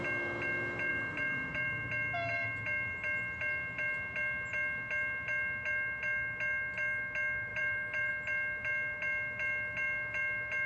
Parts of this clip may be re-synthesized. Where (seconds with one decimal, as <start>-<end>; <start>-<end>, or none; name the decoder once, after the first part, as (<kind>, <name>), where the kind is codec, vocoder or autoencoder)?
0.9-1.9 (vocoder, BigVGAN v2); 7.5-8.1